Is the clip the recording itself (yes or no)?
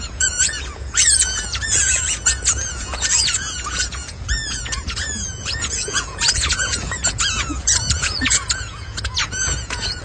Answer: no